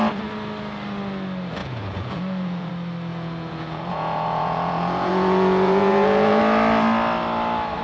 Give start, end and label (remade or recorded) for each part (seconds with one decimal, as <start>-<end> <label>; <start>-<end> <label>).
0.0-1.6 recorded; 1.6-2.7 remade; 2.7-3.1 recorded; 3.1-6.4 remade; 6.4-7.8 recorded